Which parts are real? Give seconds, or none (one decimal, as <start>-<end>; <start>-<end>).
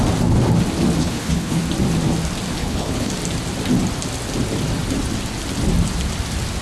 0.0-1.0; 1.6-2.6; 3.1-6.6